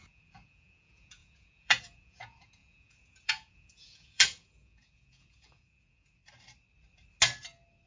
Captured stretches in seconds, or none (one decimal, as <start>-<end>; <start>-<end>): 6.2-7.9